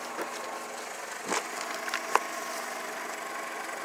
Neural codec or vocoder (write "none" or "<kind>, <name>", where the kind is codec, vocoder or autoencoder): none